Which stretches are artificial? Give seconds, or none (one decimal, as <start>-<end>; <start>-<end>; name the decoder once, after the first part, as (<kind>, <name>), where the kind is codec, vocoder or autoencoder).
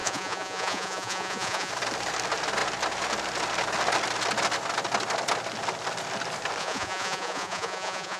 0.0-1.7 (vocoder, Vocos); 6.6-8.2